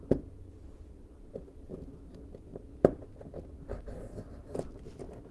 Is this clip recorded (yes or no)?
yes